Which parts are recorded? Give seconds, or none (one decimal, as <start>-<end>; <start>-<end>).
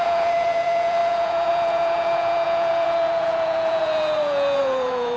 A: none